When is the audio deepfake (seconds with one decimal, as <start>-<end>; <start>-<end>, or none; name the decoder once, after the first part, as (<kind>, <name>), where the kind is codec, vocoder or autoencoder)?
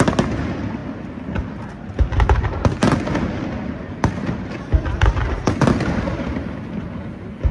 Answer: none